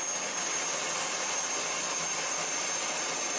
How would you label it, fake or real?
real